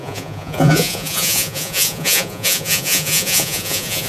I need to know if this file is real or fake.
fake